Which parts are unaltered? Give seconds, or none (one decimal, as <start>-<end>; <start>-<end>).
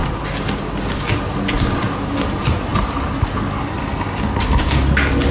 0.0-5.3